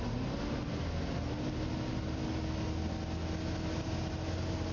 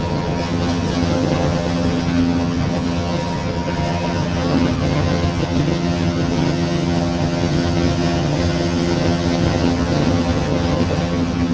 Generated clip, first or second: second